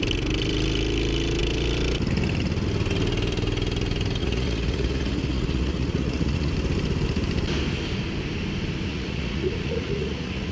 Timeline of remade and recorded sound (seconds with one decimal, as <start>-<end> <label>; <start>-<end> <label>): 0.0-4.2 recorded; 4.2-6.5 remade; 6.5-8.9 recorded; 8.9-10.5 remade